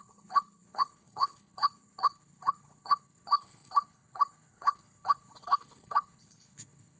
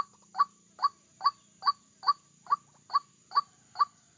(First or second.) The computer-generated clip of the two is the first